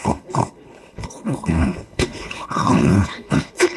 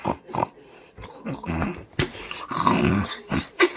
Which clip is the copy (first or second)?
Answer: first